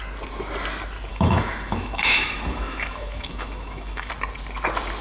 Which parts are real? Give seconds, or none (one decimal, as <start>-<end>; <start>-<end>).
0.0-1.1; 4.1-5.0